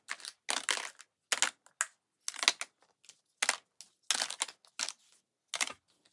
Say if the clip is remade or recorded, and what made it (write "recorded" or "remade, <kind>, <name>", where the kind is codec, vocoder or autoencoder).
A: recorded